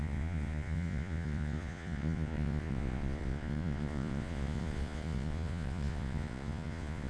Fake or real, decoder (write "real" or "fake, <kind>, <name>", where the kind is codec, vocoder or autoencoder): fake, vocoder, Vocos